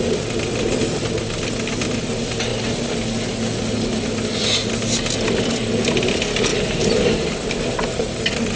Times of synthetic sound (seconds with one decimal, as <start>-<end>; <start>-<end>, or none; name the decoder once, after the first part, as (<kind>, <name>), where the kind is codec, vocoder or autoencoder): 6.5-7.1 (vocoder, BigVGAN v2)